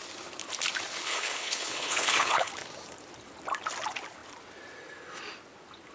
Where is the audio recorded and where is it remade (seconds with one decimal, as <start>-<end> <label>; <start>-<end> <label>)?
0.0-1.0 recorded; 1.0-2.5 remade; 2.5-5.9 recorded